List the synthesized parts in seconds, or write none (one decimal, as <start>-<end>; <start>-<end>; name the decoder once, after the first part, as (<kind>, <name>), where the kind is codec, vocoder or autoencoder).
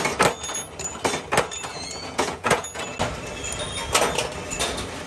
1.7-2.8 (vocoder, Vocos)